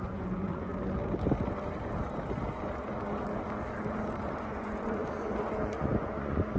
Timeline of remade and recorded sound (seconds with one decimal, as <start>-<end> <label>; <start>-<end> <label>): 0.0-0.7 remade; 0.7-4.2 recorded; 4.2-6.6 remade